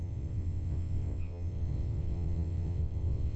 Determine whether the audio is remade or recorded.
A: remade